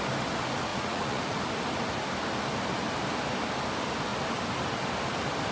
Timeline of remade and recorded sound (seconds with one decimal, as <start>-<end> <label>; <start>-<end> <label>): 0.0-0.7 recorded; 0.7-1.4 remade; 1.4-5.5 recorded